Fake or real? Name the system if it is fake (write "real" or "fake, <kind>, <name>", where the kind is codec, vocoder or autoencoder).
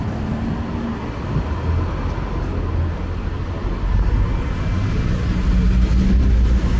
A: real